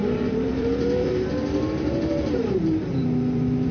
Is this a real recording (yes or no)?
no